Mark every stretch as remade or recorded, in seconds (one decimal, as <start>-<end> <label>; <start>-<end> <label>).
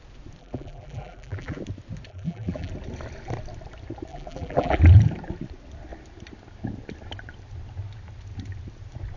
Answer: 0.0-0.4 recorded; 0.4-1.6 remade; 1.6-2.1 recorded; 2.1-2.7 remade; 2.7-4.1 recorded; 4.1-4.8 remade; 4.8-9.2 recorded